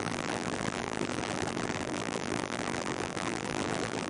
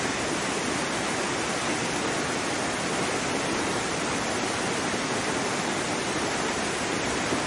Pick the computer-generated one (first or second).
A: first